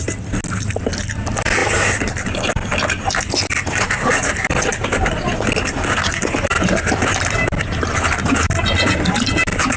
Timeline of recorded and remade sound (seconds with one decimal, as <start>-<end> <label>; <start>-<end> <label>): 0.0-9.8 recorded